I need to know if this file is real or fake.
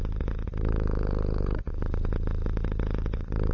real